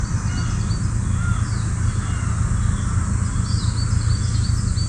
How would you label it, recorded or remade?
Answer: recorded